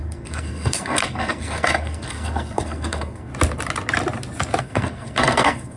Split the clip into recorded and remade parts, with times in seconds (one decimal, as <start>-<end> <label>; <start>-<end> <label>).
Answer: 0.0-3.3 remade; 3.3-4.6 recorded; 4.6-5.8 remade